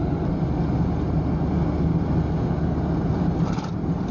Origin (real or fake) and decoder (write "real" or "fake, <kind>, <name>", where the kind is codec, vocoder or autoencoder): real